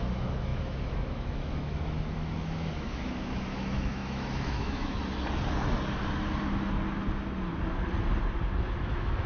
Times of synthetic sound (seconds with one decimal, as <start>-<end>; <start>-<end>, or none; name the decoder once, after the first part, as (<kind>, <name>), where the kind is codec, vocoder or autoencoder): 0.0-5.0 (autoencoder, DAC-VAE); 8.8-9.3